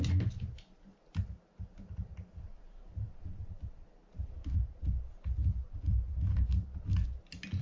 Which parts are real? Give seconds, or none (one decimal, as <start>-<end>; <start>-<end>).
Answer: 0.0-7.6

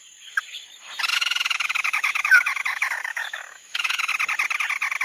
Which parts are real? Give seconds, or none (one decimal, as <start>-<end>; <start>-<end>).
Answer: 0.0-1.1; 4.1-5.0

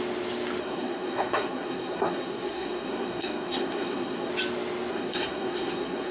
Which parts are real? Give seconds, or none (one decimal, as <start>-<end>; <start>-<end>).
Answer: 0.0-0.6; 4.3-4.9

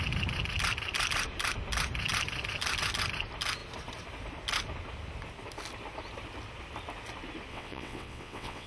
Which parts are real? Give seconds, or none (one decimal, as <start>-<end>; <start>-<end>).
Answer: 0.0-7.5

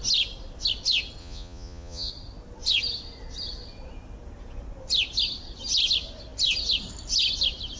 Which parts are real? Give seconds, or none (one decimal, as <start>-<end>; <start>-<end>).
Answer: 0.0-1.2; 2.1-7.8